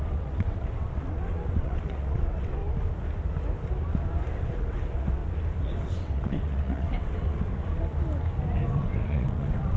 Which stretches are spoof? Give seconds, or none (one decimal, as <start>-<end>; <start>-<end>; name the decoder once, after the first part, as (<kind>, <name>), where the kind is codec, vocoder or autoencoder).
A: 0.0-2.6 (vocoder, WaveNeXt); 4.4-5.2; 5.7-7.5; 8.7-9.8